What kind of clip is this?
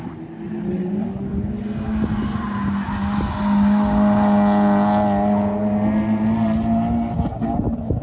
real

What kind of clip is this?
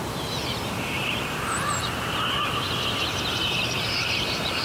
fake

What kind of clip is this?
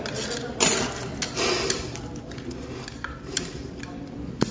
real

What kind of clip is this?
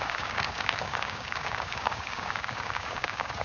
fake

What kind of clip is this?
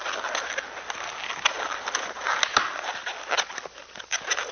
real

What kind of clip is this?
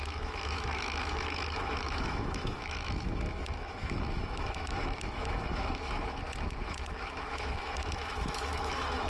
fake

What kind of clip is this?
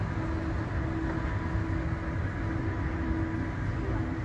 real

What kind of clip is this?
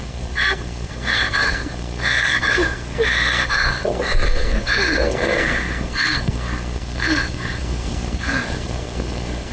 fake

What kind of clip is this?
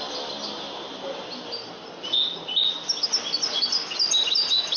real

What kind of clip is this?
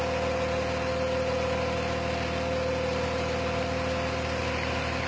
real